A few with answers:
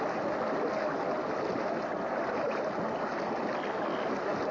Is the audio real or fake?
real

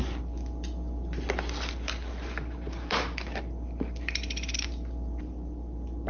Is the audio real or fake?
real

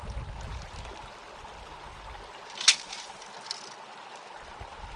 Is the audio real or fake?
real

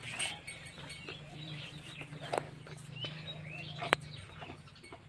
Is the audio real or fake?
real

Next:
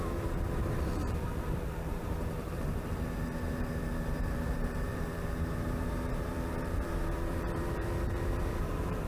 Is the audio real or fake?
fake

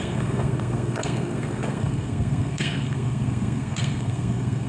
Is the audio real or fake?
fake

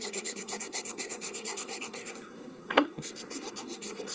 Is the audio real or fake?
fake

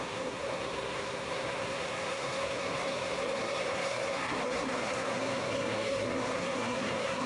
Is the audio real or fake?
fake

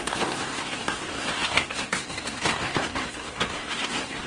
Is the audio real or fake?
fake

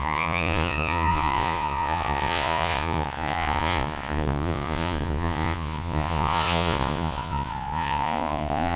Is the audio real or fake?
fake